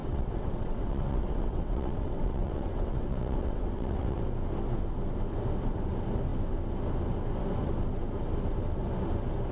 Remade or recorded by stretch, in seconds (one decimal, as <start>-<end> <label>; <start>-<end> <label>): 0.0-4.2 remade; 4.2-9.5 recorded